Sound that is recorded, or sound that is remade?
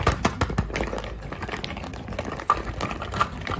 recorded